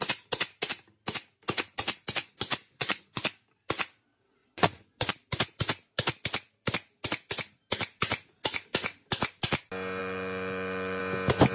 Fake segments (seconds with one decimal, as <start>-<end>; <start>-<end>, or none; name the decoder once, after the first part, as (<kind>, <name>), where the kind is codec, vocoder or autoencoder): 2.2-3.2 (vocoder, Vocos); 4.4-5.1; 10.0-11.0

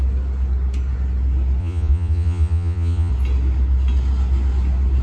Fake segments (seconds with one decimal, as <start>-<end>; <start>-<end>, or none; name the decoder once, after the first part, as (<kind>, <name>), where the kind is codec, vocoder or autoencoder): 1.6-3.1 (vocoder, Vocos)

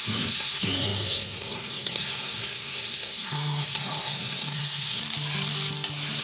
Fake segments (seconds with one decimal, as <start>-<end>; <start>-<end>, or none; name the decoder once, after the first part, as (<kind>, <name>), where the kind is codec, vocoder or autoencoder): 0.0-5.0 (codec, SNAC)